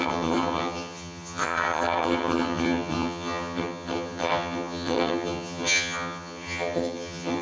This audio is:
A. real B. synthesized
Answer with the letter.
B